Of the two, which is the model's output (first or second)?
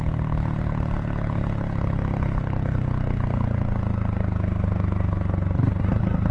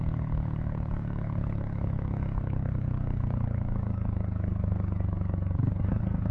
second